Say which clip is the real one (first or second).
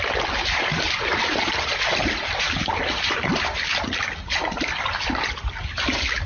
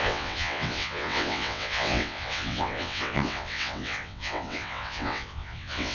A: first